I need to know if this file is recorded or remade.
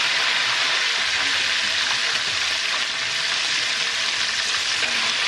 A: recorded